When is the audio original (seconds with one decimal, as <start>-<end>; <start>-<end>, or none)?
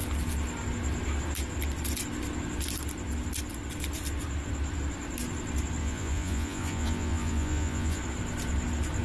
0.0-5.8; 8.0-9.0